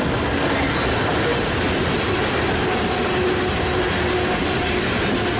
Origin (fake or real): real